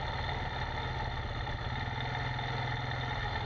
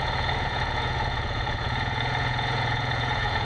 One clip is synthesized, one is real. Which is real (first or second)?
first